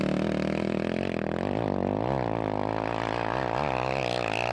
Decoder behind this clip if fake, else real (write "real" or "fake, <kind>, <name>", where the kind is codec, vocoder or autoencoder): real